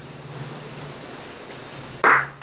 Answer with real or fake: real